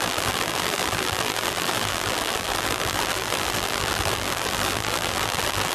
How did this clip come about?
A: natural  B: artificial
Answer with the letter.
B